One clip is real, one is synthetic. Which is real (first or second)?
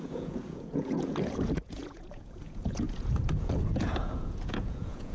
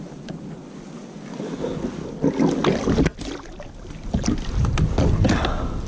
second